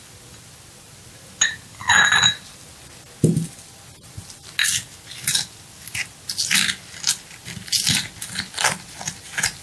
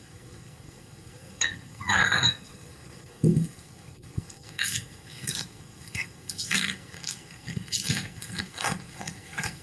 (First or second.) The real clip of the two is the first